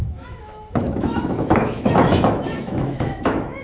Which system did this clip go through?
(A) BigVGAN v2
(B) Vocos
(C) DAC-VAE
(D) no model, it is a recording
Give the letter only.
C